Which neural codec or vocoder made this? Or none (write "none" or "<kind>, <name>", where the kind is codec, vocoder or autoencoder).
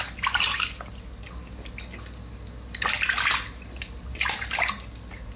none